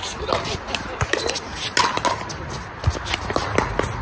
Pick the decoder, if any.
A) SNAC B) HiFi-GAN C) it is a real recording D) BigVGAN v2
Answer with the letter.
C